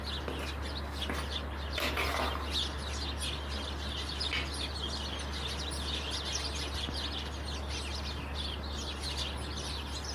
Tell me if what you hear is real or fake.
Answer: real